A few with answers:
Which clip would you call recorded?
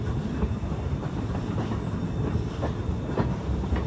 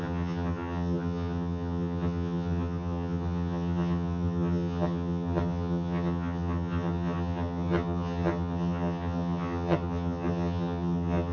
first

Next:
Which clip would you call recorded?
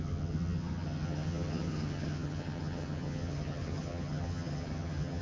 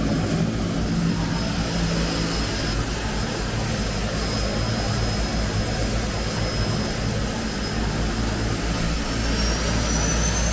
second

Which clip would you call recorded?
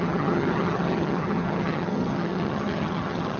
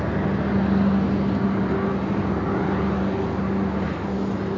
second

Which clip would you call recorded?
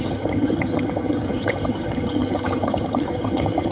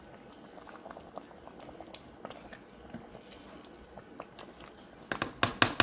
second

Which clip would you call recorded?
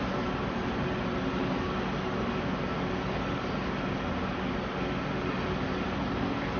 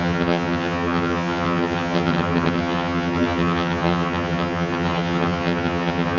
first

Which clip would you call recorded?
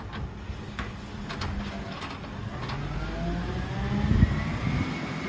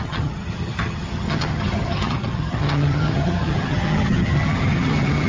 first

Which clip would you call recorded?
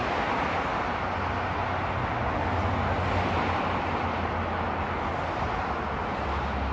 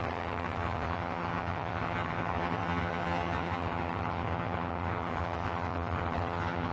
first